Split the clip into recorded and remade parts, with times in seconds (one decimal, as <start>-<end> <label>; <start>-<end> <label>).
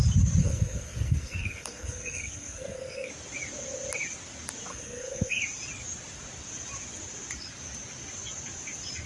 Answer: 0.0-0.4 recorded; 0.4-3.1 remade; 3.1-4.7 recorded; 4.7-5.4 remade; 5.4-9.1 recorded